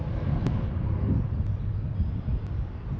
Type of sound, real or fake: real